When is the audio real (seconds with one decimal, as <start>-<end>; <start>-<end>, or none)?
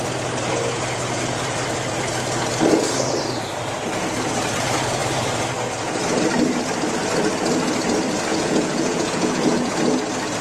0.0-8.3; 9.7-10.4